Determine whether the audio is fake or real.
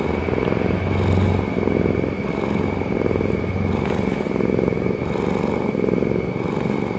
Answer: real